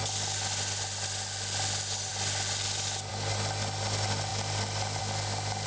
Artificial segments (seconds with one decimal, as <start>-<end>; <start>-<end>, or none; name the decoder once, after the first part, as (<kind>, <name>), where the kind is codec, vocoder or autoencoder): none